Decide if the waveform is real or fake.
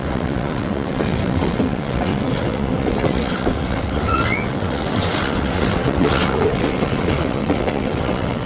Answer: fake